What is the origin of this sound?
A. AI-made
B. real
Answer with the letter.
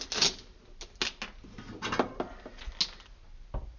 B